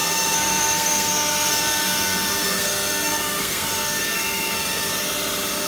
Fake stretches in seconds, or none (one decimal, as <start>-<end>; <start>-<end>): 0.0-4.9